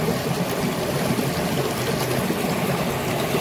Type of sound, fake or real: real